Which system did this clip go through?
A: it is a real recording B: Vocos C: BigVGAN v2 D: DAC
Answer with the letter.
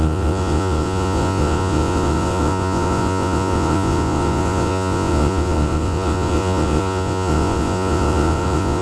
B